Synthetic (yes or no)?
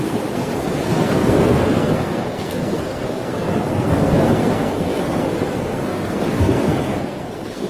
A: yes